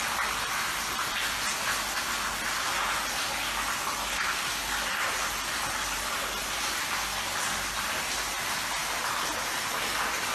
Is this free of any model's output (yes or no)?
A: yes